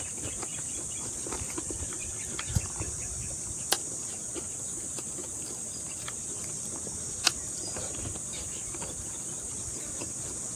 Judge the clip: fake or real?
fake